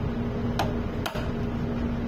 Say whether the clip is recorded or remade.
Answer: recorded